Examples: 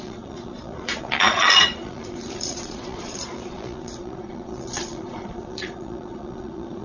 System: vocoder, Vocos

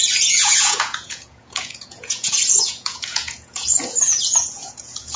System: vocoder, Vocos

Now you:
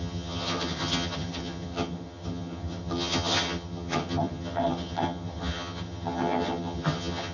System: vocoder, HiFi-GAN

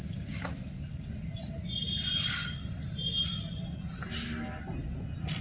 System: none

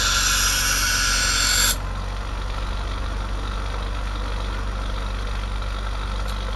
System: none